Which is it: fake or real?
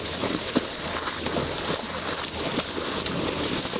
real